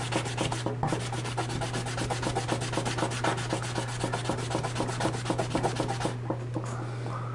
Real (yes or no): yes